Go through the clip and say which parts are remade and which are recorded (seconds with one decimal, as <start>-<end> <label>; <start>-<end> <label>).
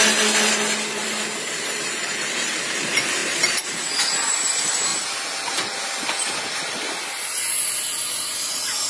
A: 0.0-3.2 recorded; 3.2-3.8 remade; 3.8-8.9 recorded